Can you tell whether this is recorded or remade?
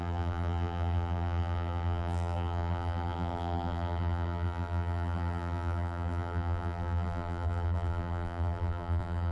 remade